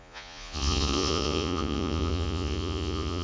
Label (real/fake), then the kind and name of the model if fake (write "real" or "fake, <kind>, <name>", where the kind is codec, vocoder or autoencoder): fake, vocoder, Vocos